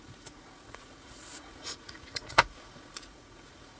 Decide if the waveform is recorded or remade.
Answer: remade